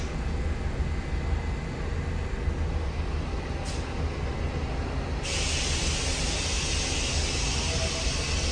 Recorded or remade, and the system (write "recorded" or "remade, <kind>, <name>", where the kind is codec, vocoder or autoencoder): recorded